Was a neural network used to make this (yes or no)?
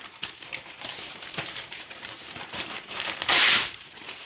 yes